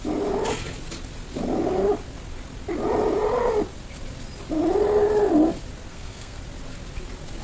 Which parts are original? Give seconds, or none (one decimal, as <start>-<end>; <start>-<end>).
0.0-5.9; 6.4-7.4